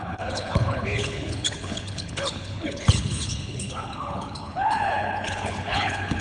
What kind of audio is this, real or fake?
fake